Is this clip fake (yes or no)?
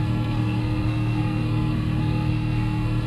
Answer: yes